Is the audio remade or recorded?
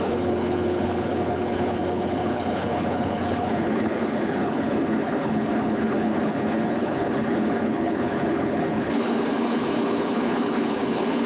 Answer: remade